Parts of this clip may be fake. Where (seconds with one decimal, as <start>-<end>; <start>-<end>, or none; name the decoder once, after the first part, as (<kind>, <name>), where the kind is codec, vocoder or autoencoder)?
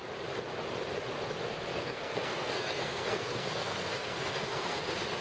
1.7-4.8 (codec, SNAC)